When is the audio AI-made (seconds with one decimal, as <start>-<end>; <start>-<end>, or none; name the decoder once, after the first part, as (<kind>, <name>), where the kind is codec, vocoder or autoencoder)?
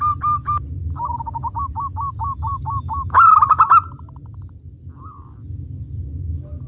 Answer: none